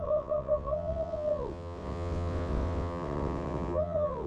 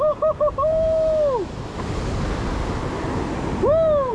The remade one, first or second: first